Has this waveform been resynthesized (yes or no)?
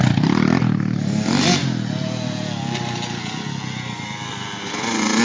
no